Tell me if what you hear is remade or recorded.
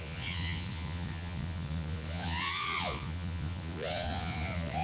remade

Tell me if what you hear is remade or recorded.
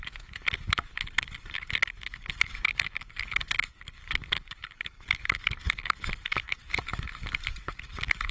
remade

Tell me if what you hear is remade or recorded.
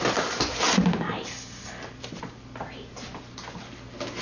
recorded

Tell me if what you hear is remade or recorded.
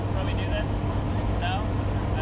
recorded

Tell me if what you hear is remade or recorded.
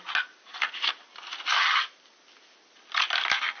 recorded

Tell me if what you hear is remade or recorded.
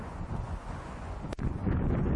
remade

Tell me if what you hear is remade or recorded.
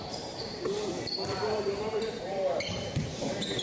remade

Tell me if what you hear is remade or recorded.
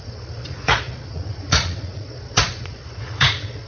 remade